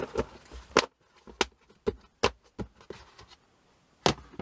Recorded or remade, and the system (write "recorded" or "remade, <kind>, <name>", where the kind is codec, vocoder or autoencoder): recorded